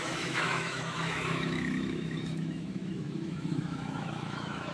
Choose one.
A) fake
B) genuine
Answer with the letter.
A